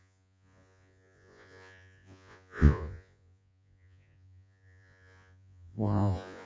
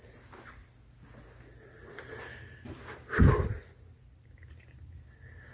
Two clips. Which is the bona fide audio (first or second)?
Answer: second